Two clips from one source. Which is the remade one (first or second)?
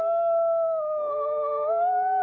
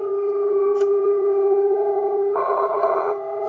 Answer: second